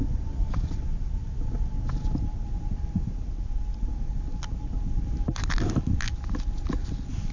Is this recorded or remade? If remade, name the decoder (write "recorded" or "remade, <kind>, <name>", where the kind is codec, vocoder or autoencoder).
recorded